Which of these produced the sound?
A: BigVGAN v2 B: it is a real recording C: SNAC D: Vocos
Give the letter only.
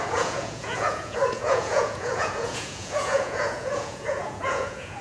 D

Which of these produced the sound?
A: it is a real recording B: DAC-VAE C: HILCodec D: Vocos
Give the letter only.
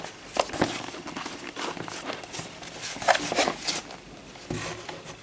A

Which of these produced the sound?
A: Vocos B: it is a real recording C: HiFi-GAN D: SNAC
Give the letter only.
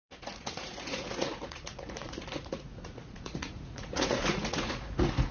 A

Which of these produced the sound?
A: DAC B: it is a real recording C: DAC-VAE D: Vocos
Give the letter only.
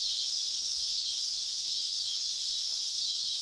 C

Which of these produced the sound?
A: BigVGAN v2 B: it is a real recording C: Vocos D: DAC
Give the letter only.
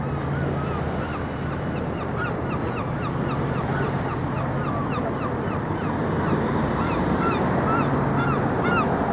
B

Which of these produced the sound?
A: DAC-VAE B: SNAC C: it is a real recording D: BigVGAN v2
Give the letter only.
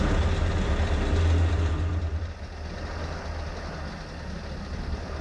C